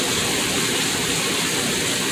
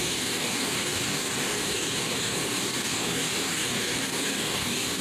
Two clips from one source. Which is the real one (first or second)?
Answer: first